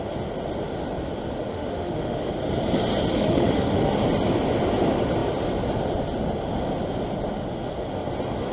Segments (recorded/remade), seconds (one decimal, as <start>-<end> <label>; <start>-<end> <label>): 0.0-1.5 recorded; 1.5-2.3 remade; 2.3-3.1 recorded; 3.1-3.9 remade; 3.9-8.5 recorded